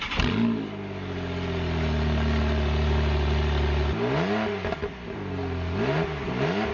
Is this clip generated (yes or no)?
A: no